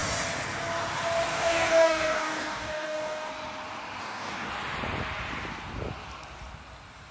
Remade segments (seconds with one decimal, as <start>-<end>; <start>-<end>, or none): 1.3-3.3; 4.0-4.5